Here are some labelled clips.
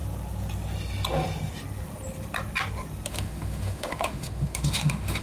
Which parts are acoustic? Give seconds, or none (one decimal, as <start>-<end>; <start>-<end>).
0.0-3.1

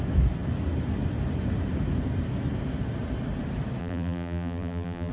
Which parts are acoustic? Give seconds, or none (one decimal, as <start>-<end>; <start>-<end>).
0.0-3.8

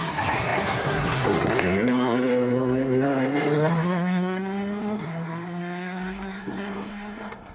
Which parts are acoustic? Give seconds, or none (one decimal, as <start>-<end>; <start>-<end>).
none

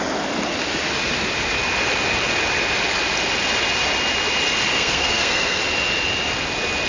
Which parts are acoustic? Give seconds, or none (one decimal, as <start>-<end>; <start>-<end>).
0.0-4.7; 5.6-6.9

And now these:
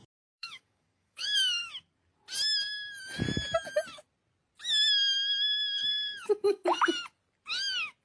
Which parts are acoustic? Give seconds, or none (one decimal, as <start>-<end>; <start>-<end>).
1.7-5.9; 6.8-8.0